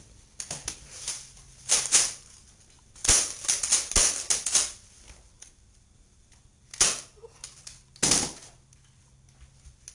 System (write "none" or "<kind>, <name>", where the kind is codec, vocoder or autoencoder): none